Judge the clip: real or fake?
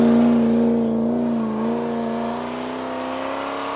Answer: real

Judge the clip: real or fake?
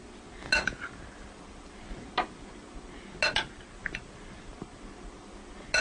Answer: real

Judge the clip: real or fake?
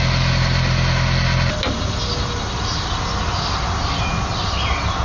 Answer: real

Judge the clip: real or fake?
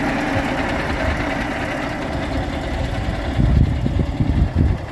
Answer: real